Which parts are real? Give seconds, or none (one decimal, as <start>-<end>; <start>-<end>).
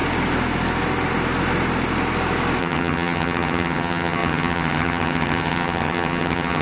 0.0-2.6